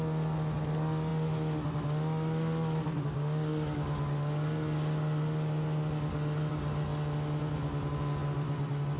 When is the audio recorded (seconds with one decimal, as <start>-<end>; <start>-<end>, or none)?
0.0-9.0